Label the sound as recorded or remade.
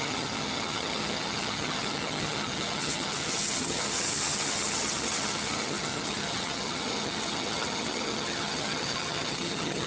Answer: remade